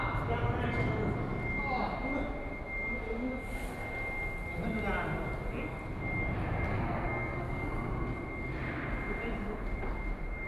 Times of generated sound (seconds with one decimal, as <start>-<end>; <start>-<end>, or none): 6.7-7.9